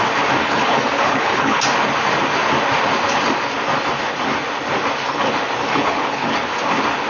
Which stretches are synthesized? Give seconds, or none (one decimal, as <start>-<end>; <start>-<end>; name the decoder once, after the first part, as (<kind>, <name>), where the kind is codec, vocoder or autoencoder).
0.4-1.6 (codec, HILCodec); 5.7-6.3